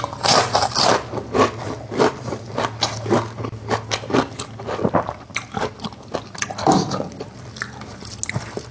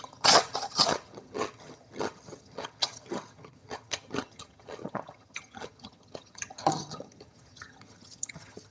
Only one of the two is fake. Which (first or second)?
second